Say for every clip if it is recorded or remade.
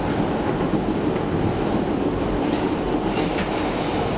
recorded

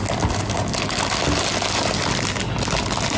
recorded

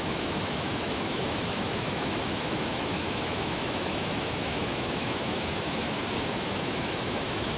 remade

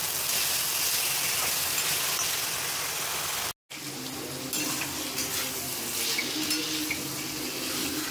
recorded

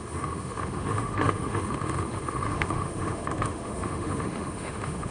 remade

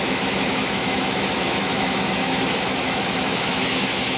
remade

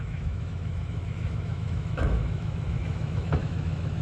remade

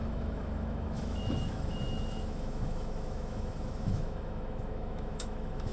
remade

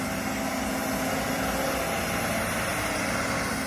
recorded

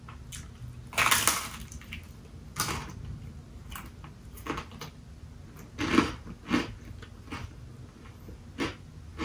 recorded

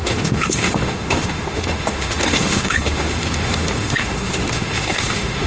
remade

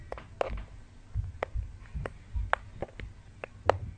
recorded